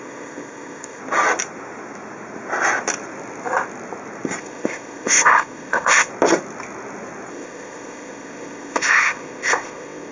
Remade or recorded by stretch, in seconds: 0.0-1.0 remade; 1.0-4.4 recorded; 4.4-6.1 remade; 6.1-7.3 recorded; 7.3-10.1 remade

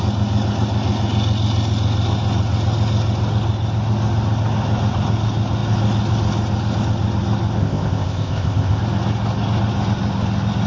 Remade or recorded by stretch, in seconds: 0.0-7.6 recorded; 7.6-8.8 remade; 8.8-10.7 recorded

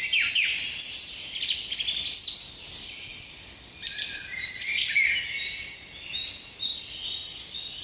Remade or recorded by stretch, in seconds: 0.0-7.8 recorded

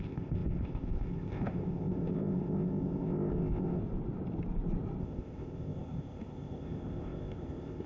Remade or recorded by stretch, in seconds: 0.0-3.8 remade; 3.8-5.0 recorded; 5.0-7.9 remade

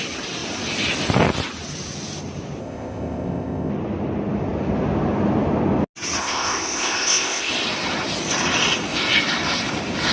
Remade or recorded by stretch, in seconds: 0.0-2.6 recorded; 2.6-3.7 remade; 3.7-6.2 recorded; 6.2-7.5 remade; 7.5-10.1 recorded